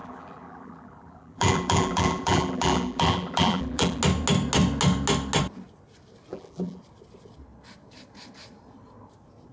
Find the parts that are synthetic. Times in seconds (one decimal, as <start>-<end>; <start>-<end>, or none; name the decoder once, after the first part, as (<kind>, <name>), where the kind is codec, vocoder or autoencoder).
0.0-4.0 (vocoder, BigVGAN v2); 6.3-6.8